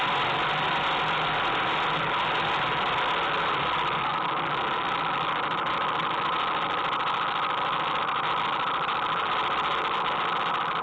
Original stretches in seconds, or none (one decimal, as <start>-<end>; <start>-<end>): 0.0-10.8